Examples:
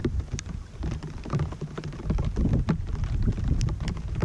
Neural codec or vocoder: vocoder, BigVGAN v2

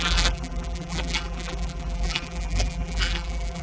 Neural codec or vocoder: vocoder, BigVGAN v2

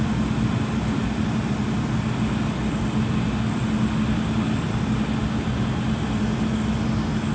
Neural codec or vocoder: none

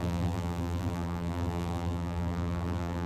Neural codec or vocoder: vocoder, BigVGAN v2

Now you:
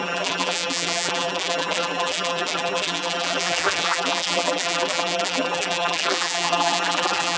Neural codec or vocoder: vocoder, BigVGAN v2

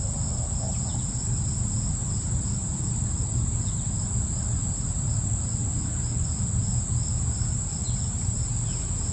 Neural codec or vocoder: none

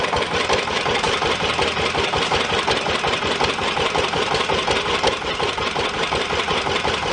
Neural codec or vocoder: vocoder, BigVGAN v2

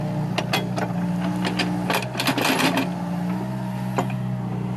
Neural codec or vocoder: none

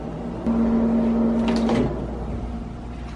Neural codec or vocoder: none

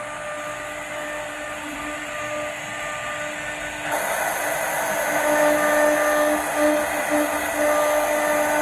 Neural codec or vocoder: none